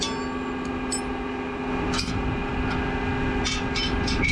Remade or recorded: recorded